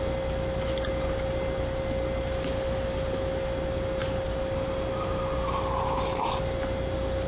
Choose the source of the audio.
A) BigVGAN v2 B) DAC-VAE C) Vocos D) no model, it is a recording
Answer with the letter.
D